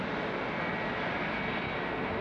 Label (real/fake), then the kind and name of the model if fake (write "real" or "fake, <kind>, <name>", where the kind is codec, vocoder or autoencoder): real